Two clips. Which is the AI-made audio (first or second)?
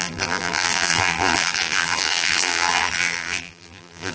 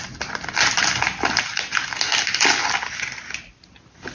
first